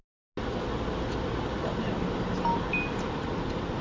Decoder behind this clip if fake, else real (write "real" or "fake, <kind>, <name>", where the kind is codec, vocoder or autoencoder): real